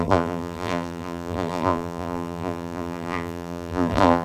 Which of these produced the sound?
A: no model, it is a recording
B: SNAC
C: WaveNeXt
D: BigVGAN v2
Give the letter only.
D